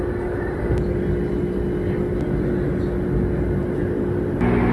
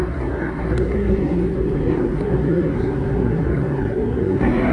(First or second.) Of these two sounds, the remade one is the second